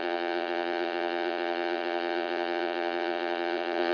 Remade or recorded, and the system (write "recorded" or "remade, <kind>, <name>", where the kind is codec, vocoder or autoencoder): remade, vocoder, BigVGAN v2